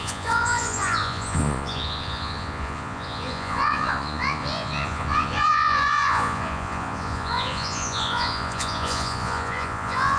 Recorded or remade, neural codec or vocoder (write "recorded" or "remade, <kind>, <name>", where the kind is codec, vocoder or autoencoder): remade, vocoder, Vocos